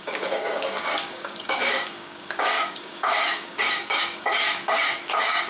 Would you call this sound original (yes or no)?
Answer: no